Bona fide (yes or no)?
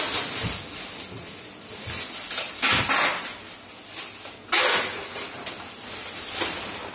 yes